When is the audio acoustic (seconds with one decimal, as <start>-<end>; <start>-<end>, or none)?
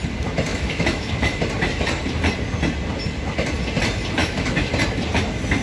0.0-0.5; 1.1-4.2; 4.7-5.6